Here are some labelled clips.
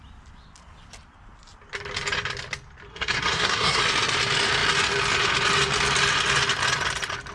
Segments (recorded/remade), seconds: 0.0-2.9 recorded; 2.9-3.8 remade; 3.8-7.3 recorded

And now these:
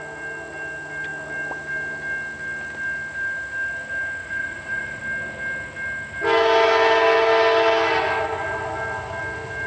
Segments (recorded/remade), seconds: 0.0-4.2 recorded; 4.2-5.0 remade; 5.0-9.7 recorded

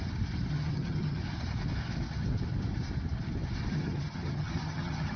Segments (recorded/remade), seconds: 0.0-0.5 recorded; 0.5-1.2 remade; 1.2-3.7 recorded; 3.7-5.2 remade

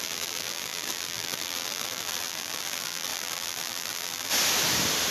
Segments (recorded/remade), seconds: 0.0-4.3 remade; 4.3-5.1 recorded